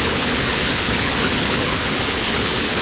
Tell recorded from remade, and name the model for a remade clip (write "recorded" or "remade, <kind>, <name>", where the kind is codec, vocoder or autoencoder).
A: remade, codec, HILCodec